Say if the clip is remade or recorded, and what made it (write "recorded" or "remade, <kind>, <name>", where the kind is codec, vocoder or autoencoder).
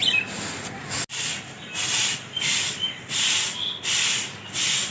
recorded